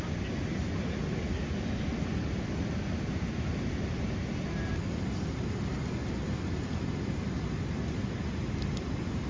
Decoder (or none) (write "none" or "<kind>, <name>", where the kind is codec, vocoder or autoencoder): none